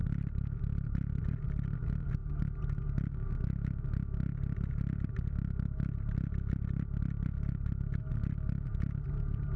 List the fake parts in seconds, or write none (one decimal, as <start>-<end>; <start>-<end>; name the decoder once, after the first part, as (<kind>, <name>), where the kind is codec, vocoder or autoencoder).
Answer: 0.0-1.2 (vocoder, BigVGAN v2)